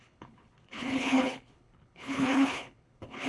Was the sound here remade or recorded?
remade